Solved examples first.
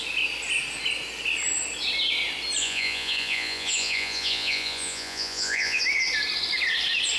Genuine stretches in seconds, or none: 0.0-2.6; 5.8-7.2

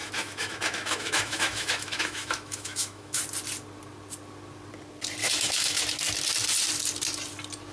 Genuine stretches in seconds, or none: 3.2-5.2; 5.8-7.7

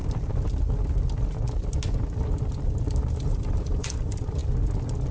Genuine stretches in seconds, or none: 0.0-3.1; 4.4-5.1

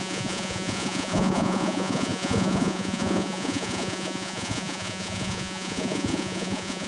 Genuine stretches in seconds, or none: none

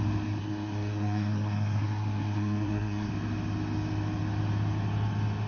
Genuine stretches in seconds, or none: 0.0-0.4; 3.1-5.5